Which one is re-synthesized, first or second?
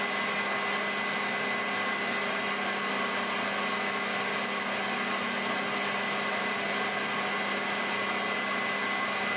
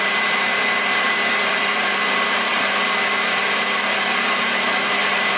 second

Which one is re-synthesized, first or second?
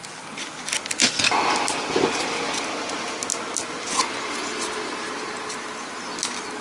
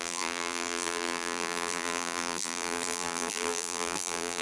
second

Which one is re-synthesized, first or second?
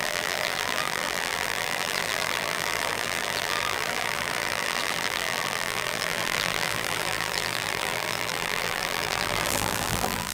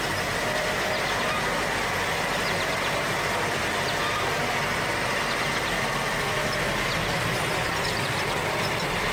first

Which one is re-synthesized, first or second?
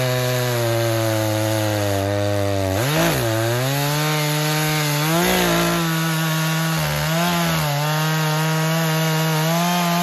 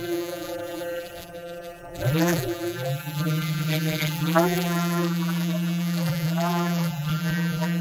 second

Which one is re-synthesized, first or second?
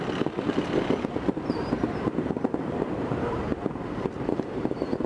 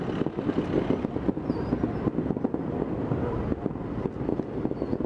first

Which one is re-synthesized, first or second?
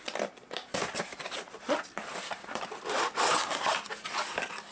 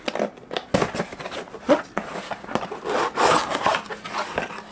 first